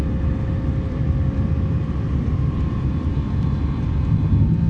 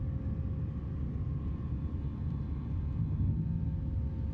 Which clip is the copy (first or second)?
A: first